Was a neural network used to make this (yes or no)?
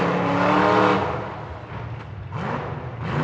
no